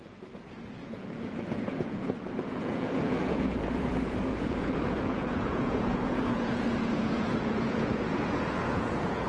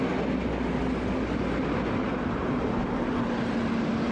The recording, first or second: second